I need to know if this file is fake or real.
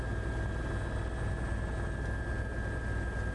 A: real